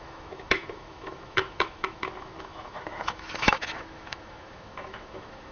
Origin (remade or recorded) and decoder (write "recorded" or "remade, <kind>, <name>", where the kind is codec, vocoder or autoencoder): remade, autoencoder, DAC-VAE